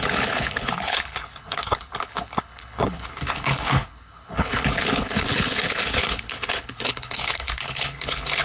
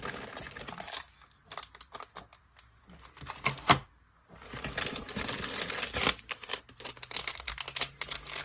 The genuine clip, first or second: second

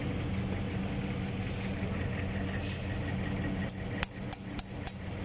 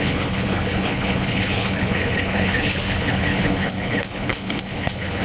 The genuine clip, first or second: first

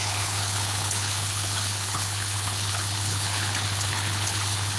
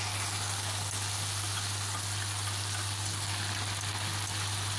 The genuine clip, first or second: second